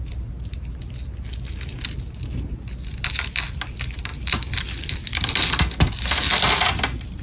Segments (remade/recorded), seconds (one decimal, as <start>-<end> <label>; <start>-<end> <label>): 0.0-4.1 recorded; 4.1-4.6 remade; 4.6-7.2 recorded

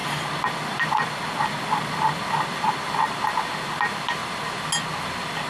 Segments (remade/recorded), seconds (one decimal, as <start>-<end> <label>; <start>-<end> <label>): 0.0-3.1 remade; 3.1-5.5 recorded

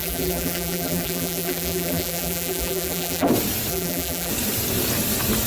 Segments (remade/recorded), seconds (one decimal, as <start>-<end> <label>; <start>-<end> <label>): 0.0-3.3 remade; 3.3-3.7 recorded; 3.7-4.3 remade; 4.3-5.5 recorded

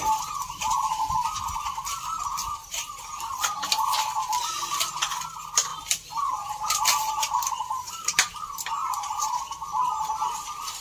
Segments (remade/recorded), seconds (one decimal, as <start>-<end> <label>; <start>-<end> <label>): 0.0-2.6 recorded; 2.6-3.3 remade; 3.3-8.8 recorded; 8.8-9.4 remade; 9.4-10.8 recorded